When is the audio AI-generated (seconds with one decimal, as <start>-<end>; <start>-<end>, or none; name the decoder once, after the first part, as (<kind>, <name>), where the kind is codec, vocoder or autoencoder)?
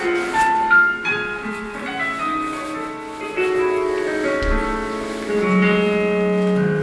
1.0-1.9 (vocoder, BigVGAN v2)